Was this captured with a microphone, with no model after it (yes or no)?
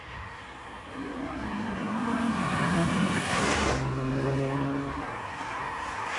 no